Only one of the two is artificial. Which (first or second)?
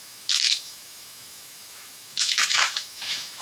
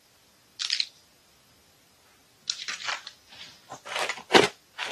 first